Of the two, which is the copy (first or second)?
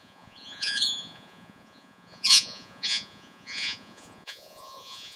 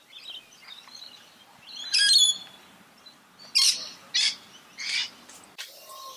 first